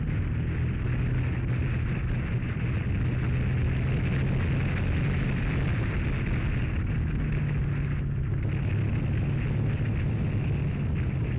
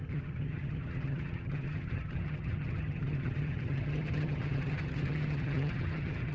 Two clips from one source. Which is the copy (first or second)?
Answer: second